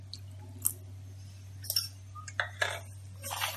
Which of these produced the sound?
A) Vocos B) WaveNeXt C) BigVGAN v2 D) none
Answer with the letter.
D